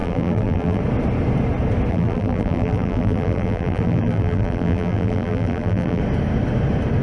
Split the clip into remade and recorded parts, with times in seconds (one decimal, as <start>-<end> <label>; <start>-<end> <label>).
0.0-0.8 remade; 0.8-1.9 recorded; 1.9-6.0 remade; 6.0-7.0 recorded

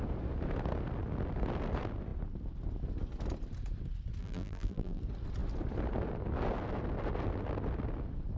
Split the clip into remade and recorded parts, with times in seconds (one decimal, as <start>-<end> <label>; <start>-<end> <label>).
0.0-4.2 recorded; 4.2-5.0 remade; 5.0-8.4 recorded

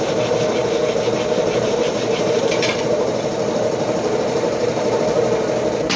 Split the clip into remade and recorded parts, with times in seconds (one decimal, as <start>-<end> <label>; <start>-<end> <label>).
0.0-1.4 recorded; 1.4-5.0 remade; 5.0-6.0 recorded

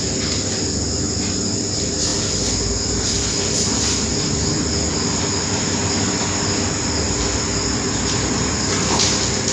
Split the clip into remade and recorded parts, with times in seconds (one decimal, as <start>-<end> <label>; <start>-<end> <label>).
0.0-4.1 recorded; 4.1-8.1 remade; 8.1-9.5 recorded

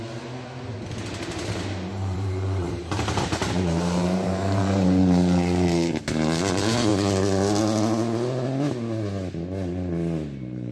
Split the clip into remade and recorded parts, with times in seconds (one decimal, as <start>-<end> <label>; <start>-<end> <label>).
0.0-1.9 recorded; 1.9-5.0 remade; 5.0-10.7 recorded